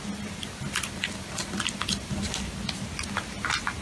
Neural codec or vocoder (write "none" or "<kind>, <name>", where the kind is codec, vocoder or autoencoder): none